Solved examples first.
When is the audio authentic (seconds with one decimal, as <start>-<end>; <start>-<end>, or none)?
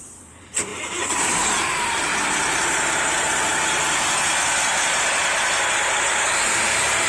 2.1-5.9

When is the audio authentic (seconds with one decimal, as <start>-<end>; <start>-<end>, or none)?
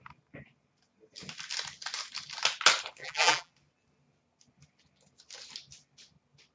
0.0-3.0; 3.5-6.5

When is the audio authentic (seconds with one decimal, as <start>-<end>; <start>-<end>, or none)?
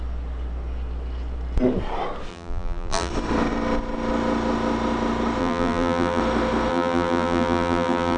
0.0-2.3; 3.1-5.4; 6.2-6.7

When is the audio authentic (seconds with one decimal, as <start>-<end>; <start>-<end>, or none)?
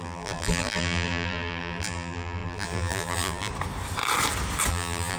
3.5-4.7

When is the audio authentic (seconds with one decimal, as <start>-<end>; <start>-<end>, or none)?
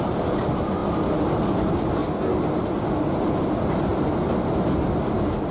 2.0-2.8; 3.9-4.6